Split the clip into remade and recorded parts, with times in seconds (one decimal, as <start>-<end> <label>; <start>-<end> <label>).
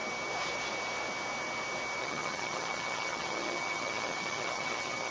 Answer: 0.0-2.0 recorded; 2.0-5.1 remade